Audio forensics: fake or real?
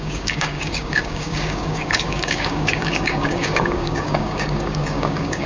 fake